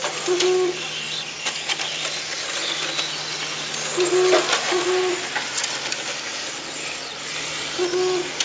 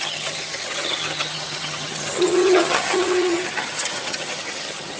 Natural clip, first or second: first